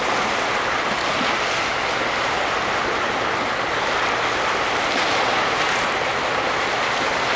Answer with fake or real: real